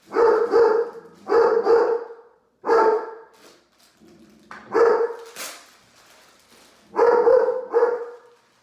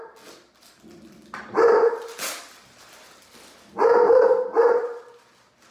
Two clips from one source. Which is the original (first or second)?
first